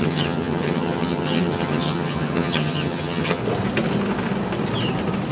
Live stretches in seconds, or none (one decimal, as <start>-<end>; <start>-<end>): 3.4-5.3